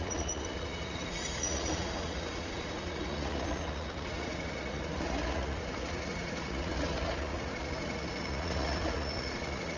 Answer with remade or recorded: remade